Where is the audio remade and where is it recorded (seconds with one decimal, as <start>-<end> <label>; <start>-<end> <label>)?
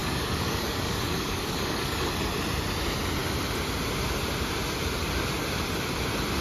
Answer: 0.0-2.1 remade; 2.1-6.4 recorded